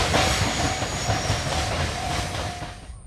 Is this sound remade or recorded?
recorded